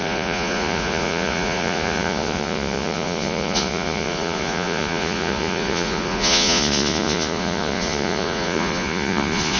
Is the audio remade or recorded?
remade